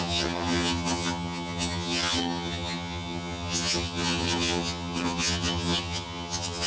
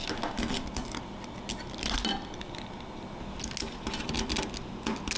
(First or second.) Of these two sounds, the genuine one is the second